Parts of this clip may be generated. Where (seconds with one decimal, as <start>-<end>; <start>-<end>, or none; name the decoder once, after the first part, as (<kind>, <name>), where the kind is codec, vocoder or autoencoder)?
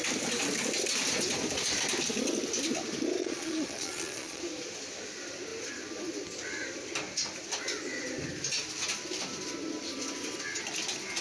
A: 3.2-4.4 (vocoder, Vocos)